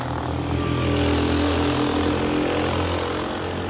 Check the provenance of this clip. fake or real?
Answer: real